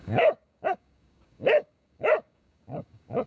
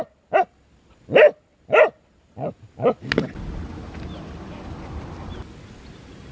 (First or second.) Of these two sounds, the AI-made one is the first